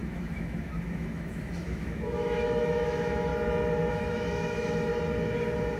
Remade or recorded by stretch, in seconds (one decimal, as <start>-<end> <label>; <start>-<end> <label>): 0.0-3.3 remade; 3.3-3.9 recorded; 3.9-4.9 remade; 4.9-5.8 recorded